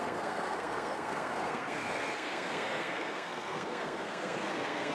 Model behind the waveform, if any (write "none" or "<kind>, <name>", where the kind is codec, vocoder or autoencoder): codec, SNAC